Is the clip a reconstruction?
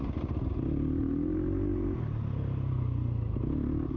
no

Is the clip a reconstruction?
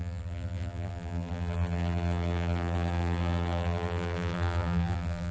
yes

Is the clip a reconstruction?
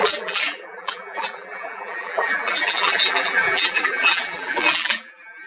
yes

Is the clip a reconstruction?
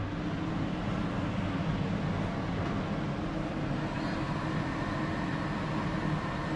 no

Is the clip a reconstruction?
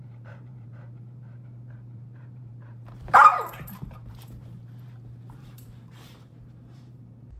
yes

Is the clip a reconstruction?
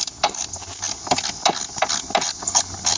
no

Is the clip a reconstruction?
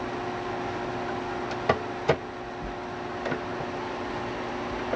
no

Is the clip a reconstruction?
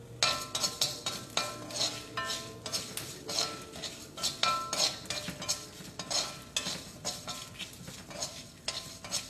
no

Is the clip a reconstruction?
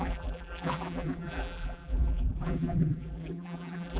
yes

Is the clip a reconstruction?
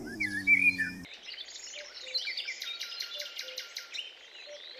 no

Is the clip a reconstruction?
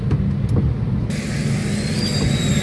no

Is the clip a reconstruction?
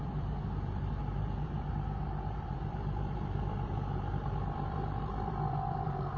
yes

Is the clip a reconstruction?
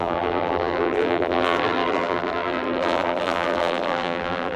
yes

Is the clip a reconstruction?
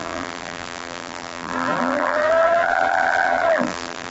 yes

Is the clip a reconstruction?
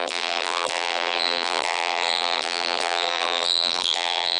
yes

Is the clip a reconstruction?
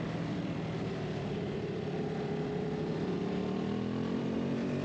yes